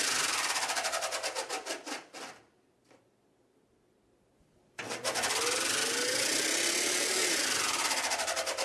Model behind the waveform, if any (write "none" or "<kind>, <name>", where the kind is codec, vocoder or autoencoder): none